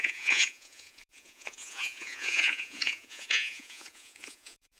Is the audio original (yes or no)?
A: no